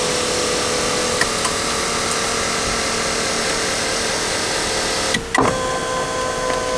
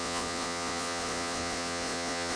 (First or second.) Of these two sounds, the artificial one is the second